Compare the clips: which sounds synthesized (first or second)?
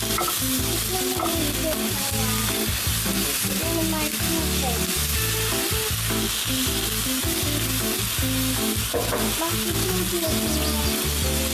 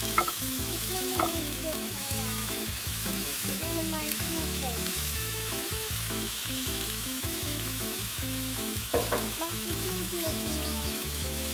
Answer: second